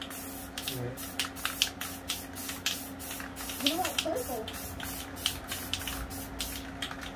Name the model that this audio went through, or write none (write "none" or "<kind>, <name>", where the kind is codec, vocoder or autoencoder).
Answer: none